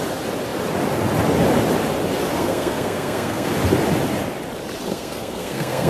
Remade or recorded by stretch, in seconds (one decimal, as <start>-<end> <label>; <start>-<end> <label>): 0.0-2.3 recorded; 2.3-3.5 remade; 3.5-4.9 recorded; 4.9-5.9 remade